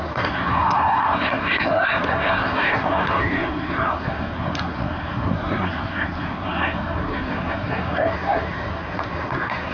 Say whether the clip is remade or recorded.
remade